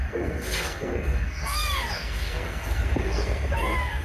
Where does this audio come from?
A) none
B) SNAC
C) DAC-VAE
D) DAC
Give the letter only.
B